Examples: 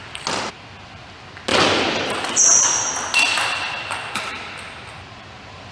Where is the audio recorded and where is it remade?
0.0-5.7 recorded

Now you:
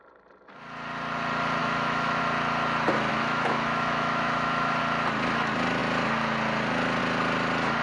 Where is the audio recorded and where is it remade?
0.0-1.6 recorded; 1.6-2.2 remade; 2.2-3.1 recorded; 3.1-4.8 remade; 4.8-7.8 recorded

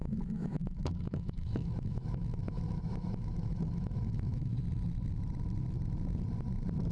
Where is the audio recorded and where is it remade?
0.0-4.5 remade; 4.5-6.9 recorded

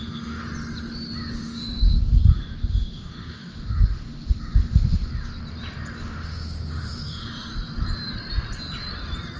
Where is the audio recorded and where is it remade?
0.0-0.4 remade; 0.4-1.3 recorded; 1.3-5.1 remade; 5.1-6.0 recorded; 6.0-7.5 remade; 7.5-9.4 recorded

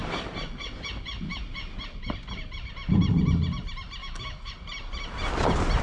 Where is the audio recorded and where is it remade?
0.0-4.0 recorded; 4.0-4.5 remade; 4.5-5.8 recorded

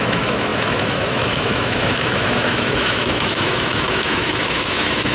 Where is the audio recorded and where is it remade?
0.0-5.1 remade

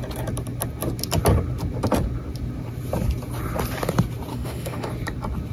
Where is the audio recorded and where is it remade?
0.0-4.3 recorded; 4.3-4.9 remade; 4.9-5.5 recorded